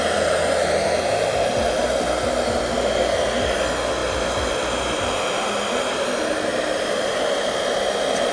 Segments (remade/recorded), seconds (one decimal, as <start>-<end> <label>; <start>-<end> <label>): 0.0-6.5 recorded; 6.5-7.3 remade; 7.3-8.3 recorded